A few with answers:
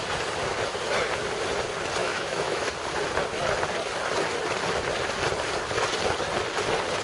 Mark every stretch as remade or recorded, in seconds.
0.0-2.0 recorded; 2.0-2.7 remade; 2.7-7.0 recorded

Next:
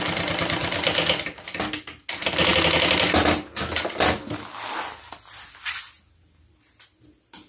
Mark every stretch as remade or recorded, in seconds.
0.0-7.5 recorded

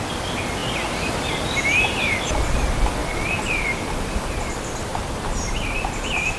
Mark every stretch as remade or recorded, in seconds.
0.0-4.9 recorded; 4.9-6.4 remade